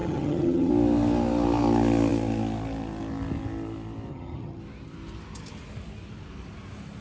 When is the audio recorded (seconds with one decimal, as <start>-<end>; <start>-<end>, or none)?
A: 0.7-4.1; 4.6-7.0